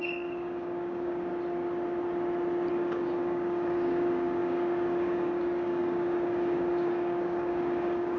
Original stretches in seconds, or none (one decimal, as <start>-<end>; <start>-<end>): 1.3-2.7